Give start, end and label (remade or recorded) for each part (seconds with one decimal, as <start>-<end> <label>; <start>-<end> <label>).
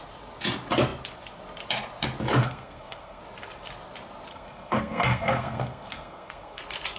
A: 0.0-2.4 recorded; 2.4-3.2 remade; 3.2-4.3 recorded; 4.3-6.6 remade; 6.6-7.0 recorded